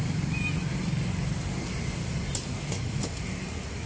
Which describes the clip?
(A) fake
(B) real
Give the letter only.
B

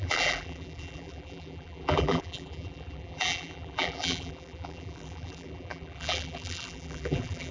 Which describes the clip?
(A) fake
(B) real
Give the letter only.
A